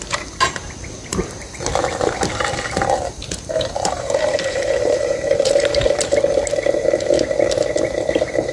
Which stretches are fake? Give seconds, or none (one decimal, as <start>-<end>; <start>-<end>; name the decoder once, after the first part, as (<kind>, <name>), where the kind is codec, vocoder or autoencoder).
1.1-6.0 (vocoder, BigVGAN v2)